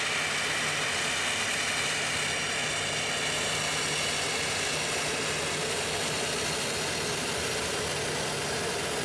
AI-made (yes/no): no